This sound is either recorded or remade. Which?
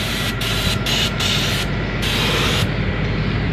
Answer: recorded